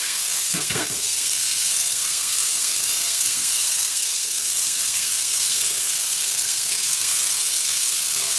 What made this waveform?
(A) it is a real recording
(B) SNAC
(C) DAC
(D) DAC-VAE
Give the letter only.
B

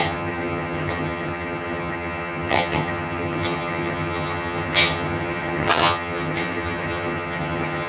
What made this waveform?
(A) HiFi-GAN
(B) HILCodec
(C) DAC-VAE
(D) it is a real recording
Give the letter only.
A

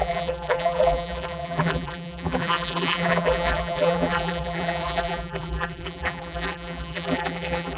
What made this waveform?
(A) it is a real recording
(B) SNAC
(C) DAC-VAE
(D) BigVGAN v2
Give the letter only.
D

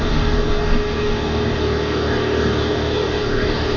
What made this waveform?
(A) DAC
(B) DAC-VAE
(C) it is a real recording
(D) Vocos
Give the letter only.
A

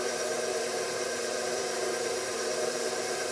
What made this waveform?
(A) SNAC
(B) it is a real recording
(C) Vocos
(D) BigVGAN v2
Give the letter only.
D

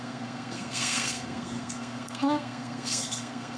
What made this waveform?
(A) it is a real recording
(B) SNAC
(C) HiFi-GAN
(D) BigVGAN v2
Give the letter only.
B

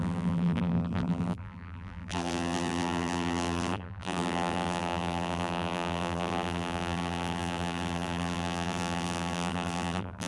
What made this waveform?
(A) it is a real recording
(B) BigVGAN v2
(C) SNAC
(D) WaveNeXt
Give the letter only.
B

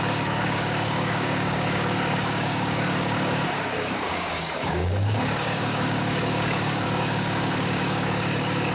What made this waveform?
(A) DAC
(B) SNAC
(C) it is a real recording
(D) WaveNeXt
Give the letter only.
A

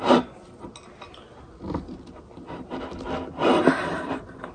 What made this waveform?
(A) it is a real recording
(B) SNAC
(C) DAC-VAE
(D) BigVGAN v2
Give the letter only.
A